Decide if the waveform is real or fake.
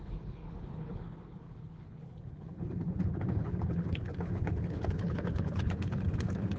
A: fake